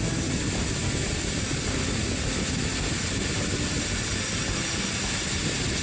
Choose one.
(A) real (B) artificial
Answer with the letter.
A